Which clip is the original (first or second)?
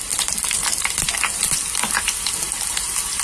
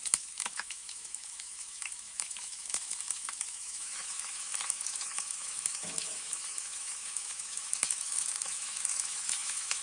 first